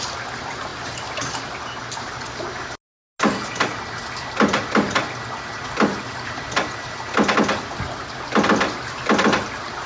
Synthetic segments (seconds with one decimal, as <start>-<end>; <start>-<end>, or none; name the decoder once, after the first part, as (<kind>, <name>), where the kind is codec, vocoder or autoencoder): none